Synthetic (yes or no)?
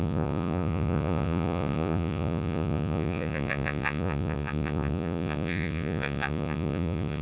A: yes